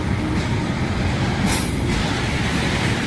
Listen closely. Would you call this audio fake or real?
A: real